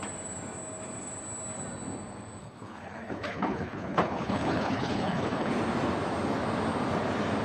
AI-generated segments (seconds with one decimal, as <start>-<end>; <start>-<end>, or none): 2.4-5.5